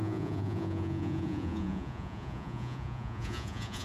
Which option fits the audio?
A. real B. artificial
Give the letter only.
B